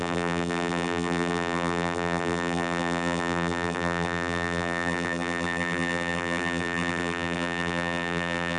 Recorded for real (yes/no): no